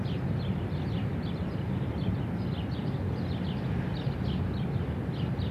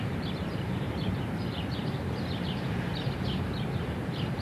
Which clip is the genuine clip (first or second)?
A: first